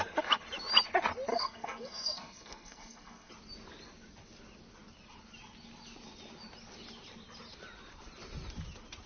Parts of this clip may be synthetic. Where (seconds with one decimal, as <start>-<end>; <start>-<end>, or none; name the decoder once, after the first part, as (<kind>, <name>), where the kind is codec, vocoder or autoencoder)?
1.3-3.3 (codec, SNAC)